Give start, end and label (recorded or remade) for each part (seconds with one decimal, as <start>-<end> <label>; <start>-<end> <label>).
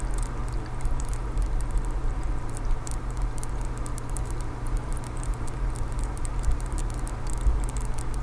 0.0-0.4 recorded; 0.4-3.5 remade; 3.5-3.9 recorded; 3.9-7.0 remade; 7.0-8.2 recorded